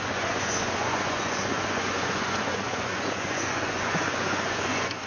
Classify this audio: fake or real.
fake